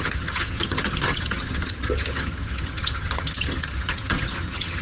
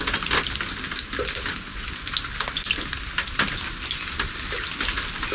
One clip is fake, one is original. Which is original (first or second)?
second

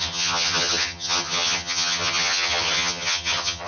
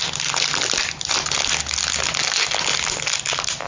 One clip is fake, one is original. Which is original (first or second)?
second